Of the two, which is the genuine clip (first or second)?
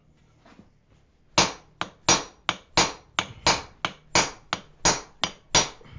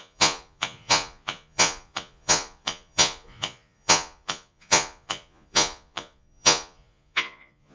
first